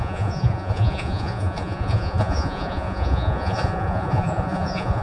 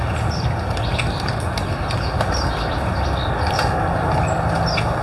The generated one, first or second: first